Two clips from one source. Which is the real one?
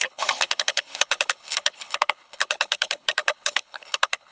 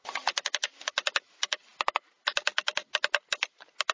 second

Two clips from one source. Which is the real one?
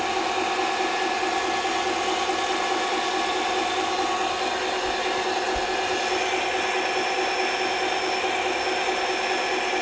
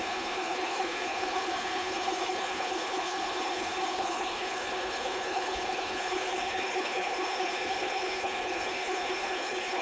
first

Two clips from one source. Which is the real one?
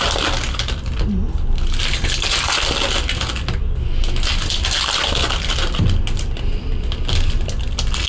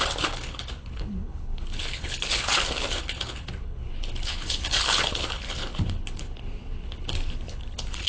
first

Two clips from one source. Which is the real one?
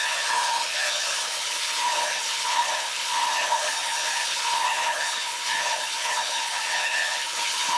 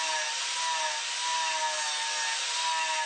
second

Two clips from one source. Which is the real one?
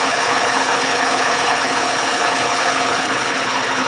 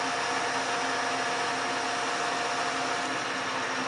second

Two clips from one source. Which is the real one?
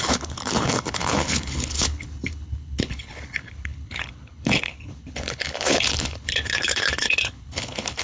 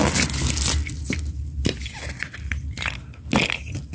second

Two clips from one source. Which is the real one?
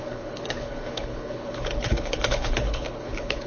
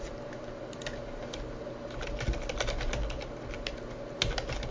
second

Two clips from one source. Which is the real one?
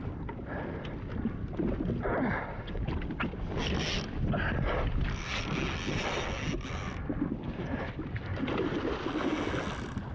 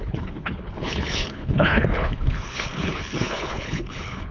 first